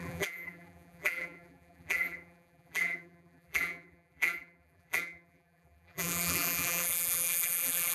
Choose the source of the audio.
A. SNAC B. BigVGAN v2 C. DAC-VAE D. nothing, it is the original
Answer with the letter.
B